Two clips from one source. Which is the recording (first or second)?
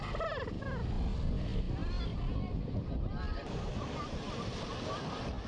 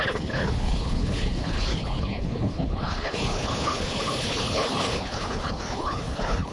first